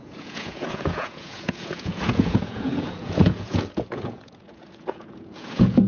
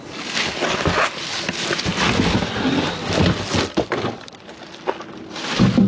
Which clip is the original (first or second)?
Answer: second